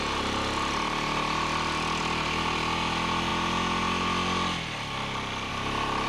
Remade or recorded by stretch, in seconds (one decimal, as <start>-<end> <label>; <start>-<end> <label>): 0.0-6.1 recorded